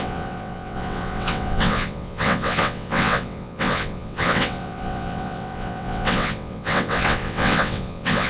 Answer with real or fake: fake